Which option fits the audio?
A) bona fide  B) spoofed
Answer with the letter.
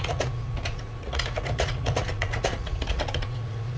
B